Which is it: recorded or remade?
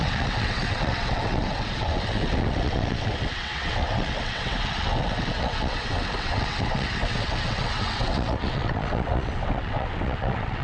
remade